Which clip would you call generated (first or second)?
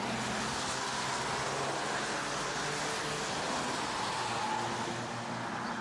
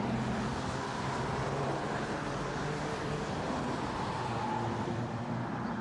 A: second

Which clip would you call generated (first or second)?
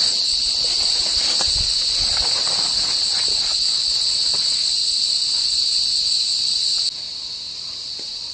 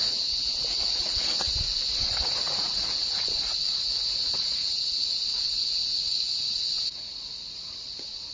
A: second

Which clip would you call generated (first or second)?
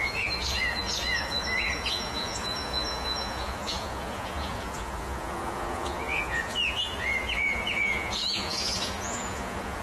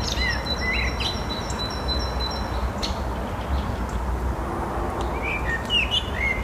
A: first